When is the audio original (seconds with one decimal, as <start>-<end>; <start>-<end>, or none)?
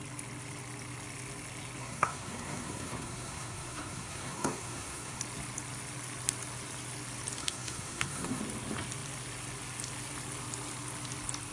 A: 0.0-1.8; 5.2-7.4; 8.4-11.5